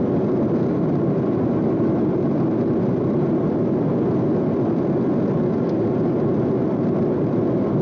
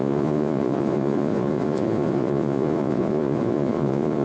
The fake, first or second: second